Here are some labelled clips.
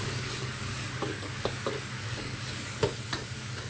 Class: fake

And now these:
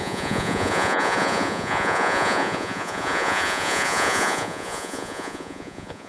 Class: fake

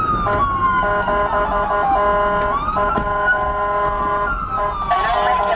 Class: real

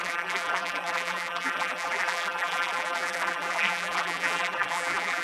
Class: fake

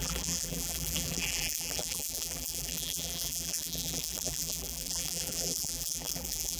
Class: fake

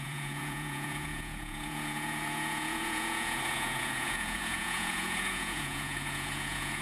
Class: fake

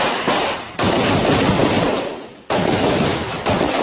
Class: fake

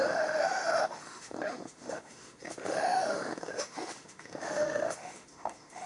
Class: fake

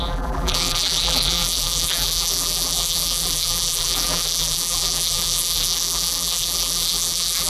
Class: fake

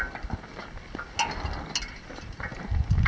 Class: real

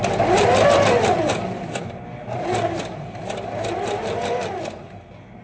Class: real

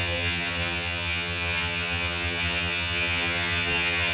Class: fake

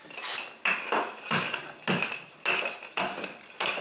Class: real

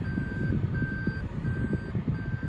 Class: real